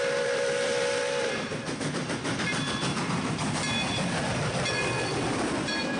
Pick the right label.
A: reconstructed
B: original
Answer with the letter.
A